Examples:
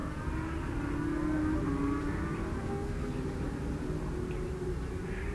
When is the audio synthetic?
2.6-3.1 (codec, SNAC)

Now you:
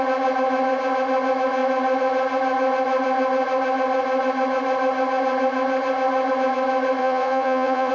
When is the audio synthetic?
7.0-7.9 (vocoder, Vocos)